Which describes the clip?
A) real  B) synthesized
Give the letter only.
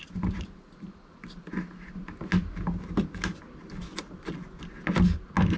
A